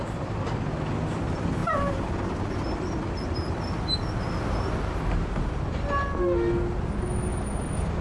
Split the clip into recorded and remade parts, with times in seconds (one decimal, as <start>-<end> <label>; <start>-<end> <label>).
0.0-8.0 recorded